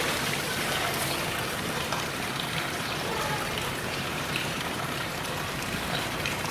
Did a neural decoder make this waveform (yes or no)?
yes